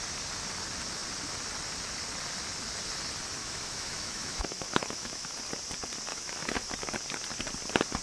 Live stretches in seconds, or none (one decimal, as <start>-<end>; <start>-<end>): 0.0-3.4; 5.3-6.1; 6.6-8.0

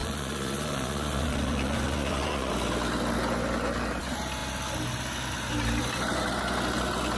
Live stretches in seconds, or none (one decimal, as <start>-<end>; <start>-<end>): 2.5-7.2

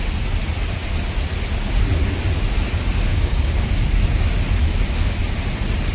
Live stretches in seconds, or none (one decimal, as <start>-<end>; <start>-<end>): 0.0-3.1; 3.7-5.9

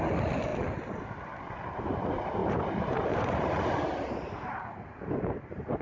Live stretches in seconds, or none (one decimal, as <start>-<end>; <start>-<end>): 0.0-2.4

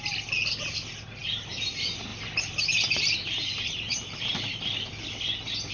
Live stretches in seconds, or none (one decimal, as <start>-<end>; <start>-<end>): 0.0-1.2; 1.7-3.2; 4.5-5.7